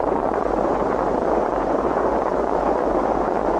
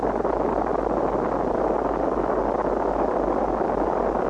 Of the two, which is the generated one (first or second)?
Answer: first